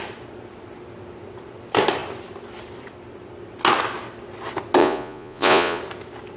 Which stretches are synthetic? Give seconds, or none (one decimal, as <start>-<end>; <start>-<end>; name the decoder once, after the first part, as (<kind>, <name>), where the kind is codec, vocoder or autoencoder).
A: 4.8-5.8 (vocoder, Vocos)